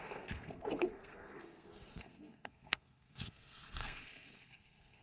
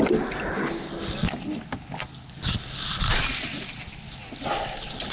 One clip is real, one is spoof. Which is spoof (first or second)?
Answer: first